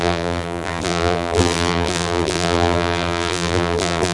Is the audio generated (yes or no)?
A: yes